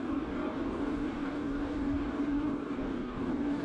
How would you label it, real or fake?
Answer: fake